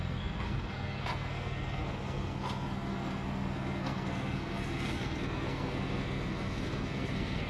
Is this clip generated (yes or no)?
yes